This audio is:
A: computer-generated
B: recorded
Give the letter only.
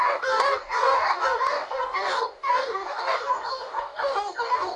A